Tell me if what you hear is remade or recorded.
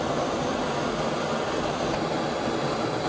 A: recorded